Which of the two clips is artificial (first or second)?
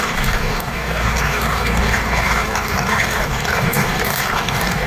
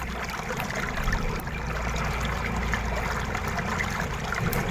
first